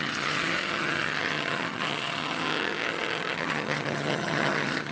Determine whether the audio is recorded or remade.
remade